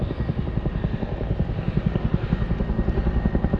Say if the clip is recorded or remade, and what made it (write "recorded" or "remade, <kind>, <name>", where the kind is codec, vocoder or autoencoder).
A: recorded